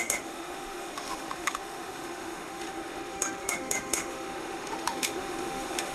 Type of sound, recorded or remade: remade